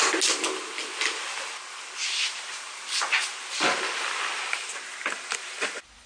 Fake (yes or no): no